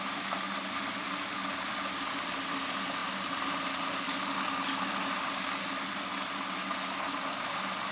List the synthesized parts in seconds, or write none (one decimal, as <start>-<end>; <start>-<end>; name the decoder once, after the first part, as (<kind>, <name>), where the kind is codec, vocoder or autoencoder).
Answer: none